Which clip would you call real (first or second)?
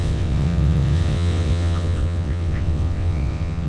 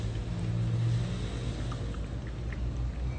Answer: second